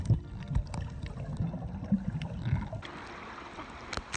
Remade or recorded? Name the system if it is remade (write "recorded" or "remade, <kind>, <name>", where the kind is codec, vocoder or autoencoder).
recorded